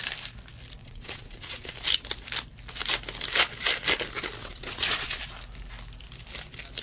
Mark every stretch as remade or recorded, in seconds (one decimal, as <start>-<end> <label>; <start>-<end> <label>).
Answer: 0.0-0.8 recorded; 0.8-1.7 remade; 1.7-4.4 recorded; 4.4-5.2 remade; 5.2-6.8 recorded